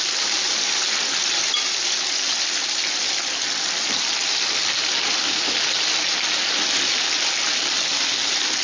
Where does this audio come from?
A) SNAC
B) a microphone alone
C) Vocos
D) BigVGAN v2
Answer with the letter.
B